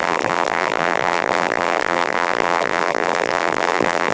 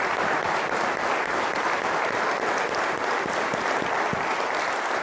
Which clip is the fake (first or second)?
first